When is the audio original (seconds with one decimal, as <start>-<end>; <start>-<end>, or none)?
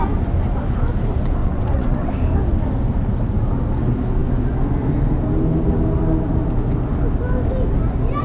0.0-1.4; 2.1-8.2